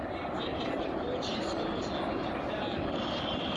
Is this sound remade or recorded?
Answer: recorded